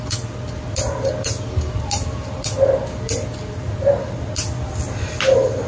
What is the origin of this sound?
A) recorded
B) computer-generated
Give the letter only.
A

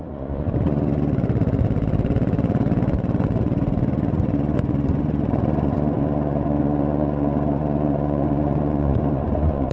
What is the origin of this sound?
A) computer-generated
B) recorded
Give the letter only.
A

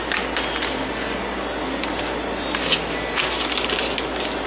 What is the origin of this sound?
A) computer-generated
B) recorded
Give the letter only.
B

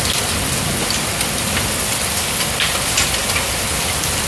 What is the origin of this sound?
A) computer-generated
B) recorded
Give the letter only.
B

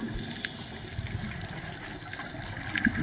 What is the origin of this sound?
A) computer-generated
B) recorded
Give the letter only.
B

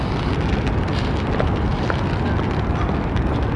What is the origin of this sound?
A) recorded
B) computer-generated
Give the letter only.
A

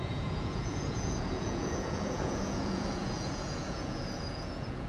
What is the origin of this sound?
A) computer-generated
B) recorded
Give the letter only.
A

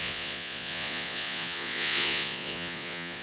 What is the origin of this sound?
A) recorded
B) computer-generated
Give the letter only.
B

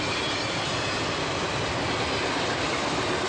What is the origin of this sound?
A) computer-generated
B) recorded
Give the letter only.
B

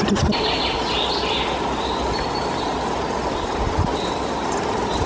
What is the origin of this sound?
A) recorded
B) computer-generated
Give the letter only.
A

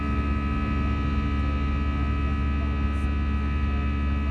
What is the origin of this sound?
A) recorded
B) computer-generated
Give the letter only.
A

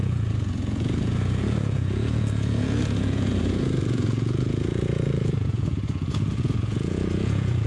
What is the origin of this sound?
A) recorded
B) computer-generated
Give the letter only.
B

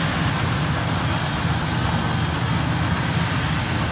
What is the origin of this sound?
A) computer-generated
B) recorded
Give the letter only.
B